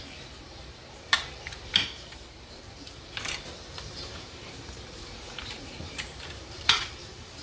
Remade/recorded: remade